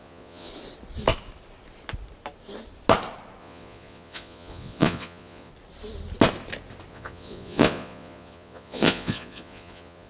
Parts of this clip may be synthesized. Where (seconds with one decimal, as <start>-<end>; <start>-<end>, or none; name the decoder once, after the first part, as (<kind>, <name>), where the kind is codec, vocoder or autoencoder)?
0.0-0.5 (vocoder, Vocos); 3.4-5.5; 6.9-10.1